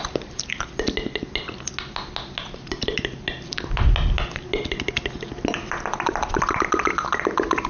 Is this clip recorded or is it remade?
recorded